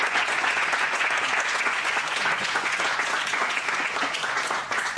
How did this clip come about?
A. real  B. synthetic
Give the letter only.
B